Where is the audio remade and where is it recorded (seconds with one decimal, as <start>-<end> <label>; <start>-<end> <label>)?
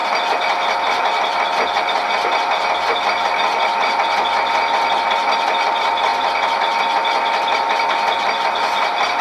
0.0-9.2 recorded